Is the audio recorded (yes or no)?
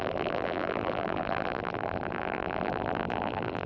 no